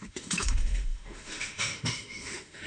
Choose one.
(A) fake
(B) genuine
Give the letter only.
A